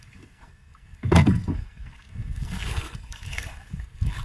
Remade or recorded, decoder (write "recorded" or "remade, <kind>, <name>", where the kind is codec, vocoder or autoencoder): remade, codec, SNAC